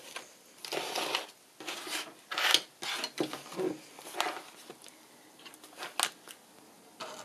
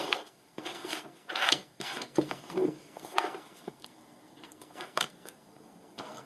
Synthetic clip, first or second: second